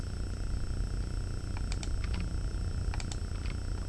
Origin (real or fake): real